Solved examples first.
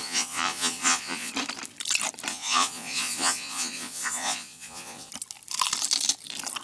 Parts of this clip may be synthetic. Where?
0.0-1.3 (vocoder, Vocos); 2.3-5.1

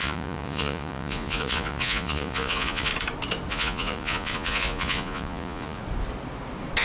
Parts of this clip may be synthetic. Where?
0.0-2.9 (vocoder, Vocos); 3.5-5.8

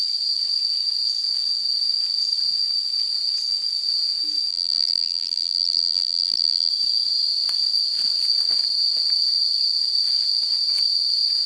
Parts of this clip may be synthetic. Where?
4.5-6.7 (vocoder, BigVGAN v2)

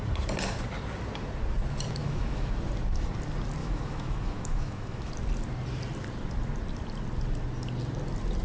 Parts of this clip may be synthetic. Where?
2.0-2.5 (autoencoder, DAC-VAE); 3.6-5.1

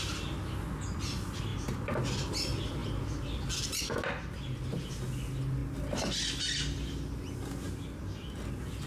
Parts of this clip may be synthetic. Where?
none

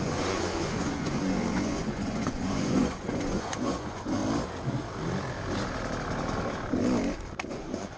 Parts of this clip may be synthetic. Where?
0.0-4.2 (vocoder, Vocos); 7.5-8.0

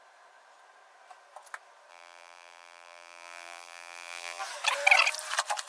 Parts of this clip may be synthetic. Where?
1.9-4.4 (vocoder, BigVGAN v2)